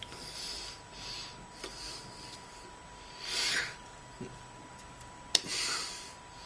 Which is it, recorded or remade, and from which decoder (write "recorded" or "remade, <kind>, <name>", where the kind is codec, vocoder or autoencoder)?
remade, vocoder, BigVGAN v2